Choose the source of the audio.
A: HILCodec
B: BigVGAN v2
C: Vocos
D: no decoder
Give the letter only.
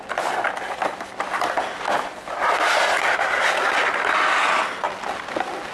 D